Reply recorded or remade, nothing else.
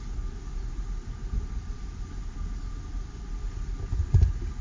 recorded